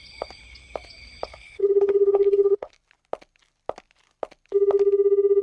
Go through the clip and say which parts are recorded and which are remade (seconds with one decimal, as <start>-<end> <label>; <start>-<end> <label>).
0.0-1.3 recorded; 1.3-2.7 remade; 2.7-5.4 recorded